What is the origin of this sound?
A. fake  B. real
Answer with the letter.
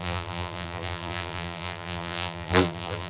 A